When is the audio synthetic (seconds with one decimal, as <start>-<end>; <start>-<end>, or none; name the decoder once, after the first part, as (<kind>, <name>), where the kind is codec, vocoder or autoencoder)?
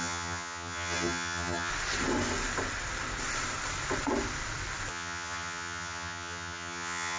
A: 0.0-1.7 (vocoder, HiFi-GAN); 4.9-7.2